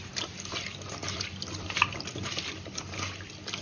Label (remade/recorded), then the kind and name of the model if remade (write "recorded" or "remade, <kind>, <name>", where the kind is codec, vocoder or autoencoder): recorded